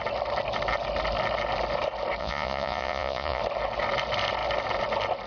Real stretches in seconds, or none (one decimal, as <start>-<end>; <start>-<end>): 0.0-2.2; 3.4-5.3